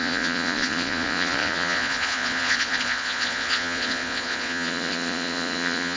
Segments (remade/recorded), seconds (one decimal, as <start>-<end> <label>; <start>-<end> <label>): 0.0-6.0 remade